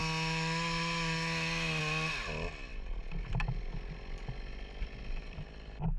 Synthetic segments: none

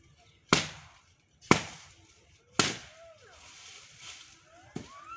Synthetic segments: 0.5-2.4 (vocoder, BigVGAN v2)

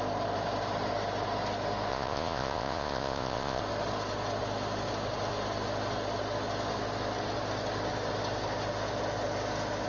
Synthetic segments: 1.9-3.6 (vocoder, Vocos)

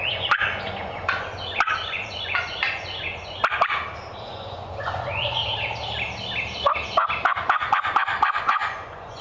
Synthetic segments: 0.0-3.4 (vocoder, Vocos); 4.2-5.4; 8.4-9.2

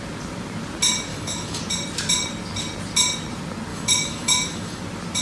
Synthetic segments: 1.1-1.6 (autoencoder, DAC-VAE); 3.7-4.8

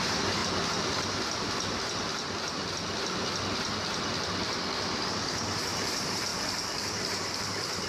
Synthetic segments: 0.0-0.4 (vocoder, BigVGAN v2); 5.1-6.3; 6.9-7.9

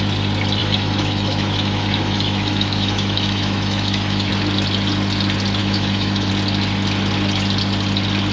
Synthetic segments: 0.6-4.3 (autoencoder, DAC-VAE); 5.6-6.3